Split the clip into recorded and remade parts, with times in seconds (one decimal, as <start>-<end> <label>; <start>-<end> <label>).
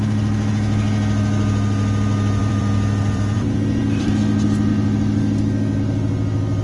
0.0-2.4 recorded; 2.4-4.2 remade; 4.2-6.6 recorded